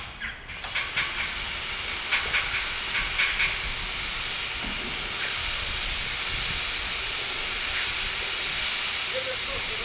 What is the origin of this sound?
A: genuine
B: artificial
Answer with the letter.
A